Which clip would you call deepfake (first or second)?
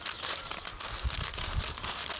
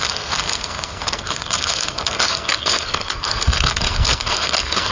second